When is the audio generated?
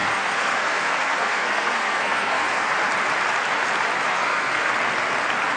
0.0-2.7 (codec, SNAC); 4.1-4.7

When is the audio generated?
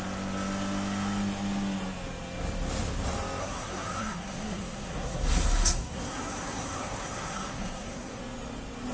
3.4-8.2 (codec, SNAC)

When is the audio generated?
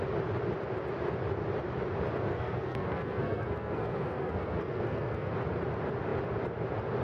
2.3-5.3 (codec, SNAC)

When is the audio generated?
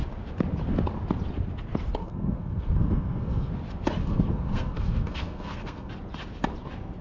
2.0-3.5 (codec, SNAC); 4.0-5.9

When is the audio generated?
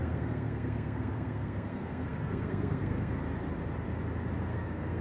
0.0-3.2 (codec, SNAC); 4.5-5.0